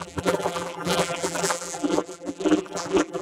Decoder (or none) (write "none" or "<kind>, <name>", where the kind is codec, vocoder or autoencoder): vocoder, BigVGAN v2